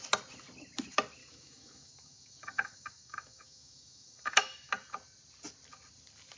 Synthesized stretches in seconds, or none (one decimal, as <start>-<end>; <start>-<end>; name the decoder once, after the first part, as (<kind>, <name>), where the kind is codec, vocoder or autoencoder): 1.2-4.7 (autoencoder, DAC-VAE)

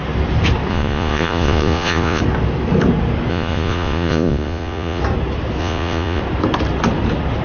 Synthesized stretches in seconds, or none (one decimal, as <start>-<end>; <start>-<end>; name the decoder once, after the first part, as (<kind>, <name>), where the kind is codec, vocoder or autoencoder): 0.7-2.2 (vocoder, Vocos); 3.3-5.0; 5.6-6.2